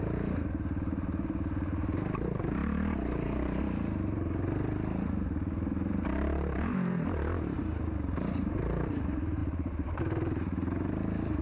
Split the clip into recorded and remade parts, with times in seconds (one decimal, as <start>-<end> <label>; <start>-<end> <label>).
0.0-11.4 remade